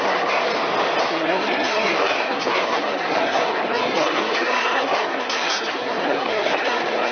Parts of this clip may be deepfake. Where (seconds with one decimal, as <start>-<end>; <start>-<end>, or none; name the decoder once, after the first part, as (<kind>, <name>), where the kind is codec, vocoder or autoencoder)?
0.0-0.5 (codec, SNAC); 1.0-7.1